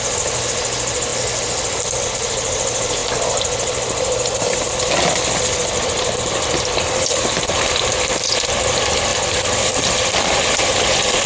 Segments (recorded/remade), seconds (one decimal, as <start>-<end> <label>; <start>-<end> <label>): 0.0-9.1 recorded; 9.1-11.3 remade